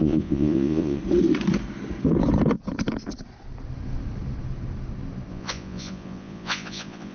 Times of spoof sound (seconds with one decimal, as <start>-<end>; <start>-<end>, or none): 0.0-1.0; 5.3-7.1